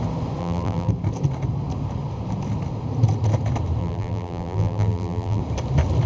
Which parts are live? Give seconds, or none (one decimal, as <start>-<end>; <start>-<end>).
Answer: 0.0-0.4; 0.9-3.8; 5.4-6.1